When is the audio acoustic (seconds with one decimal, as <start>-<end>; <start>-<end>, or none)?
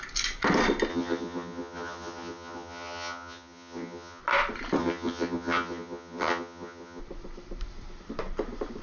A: 0.0-0.9; 4.2-4.8; 7.0-8.8